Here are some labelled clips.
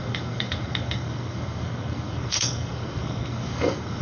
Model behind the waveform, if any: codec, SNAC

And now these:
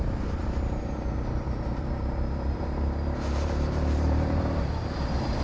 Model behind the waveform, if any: vocoder, BigVGAN v2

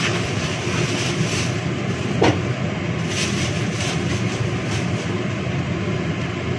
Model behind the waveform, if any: vocoder, BigVGAN v2